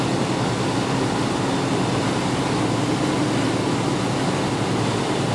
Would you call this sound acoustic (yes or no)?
yes